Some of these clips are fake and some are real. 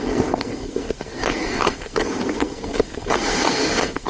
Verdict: fake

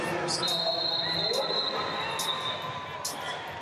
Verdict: real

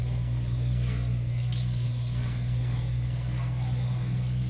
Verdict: fake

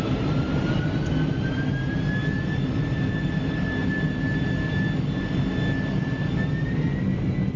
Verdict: real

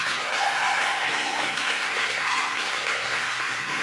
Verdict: fake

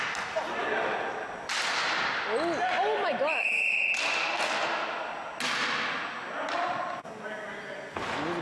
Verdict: real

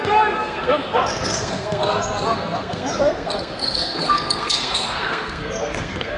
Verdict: fake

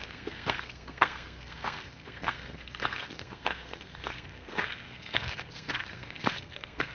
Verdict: fake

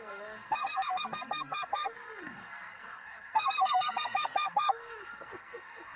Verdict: fake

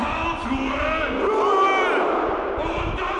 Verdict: real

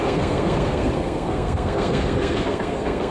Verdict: fake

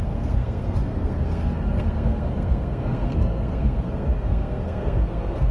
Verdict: fake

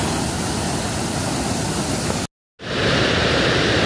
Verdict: real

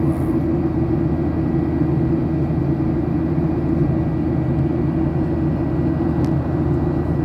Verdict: real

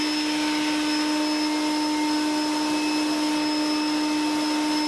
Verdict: real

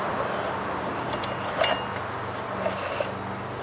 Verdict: real